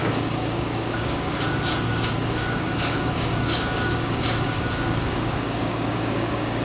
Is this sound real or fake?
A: fake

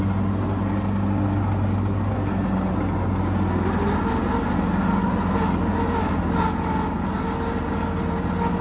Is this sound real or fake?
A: real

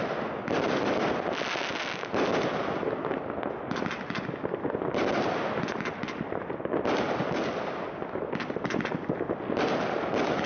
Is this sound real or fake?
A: real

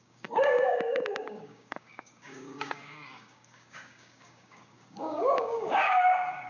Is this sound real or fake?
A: fake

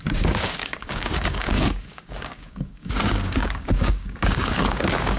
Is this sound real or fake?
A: fake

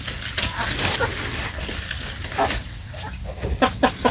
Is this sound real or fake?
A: real